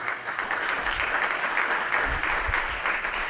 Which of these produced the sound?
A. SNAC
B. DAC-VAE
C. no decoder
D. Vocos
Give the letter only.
C